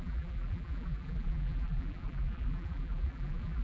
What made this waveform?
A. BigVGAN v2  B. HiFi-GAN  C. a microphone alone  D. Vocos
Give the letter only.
A